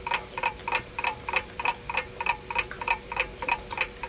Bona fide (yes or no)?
yes